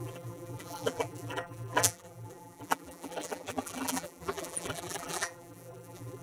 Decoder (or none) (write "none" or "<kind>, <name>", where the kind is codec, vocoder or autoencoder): vocoder, BigVGAN v2